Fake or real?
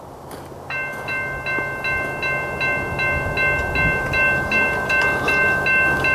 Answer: real